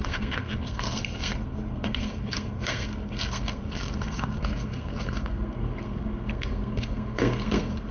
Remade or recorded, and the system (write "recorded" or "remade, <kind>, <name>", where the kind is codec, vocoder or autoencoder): remade, codec, SNAC